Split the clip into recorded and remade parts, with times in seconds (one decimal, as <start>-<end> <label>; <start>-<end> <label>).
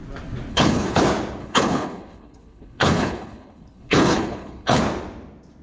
0.0-0.5 recorded; 0.5-1.0 remade; 1.0-1.4 recorded; 1.4-4.8 remade; 4.8-5.6 recorded